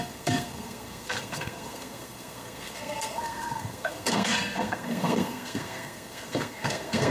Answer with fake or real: fake